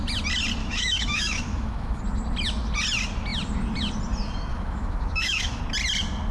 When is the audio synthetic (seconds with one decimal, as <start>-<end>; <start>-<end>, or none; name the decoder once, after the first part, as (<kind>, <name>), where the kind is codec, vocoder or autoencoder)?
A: 0.6-2.0 (autoencoder, DAC-VAE); 4.5-5.6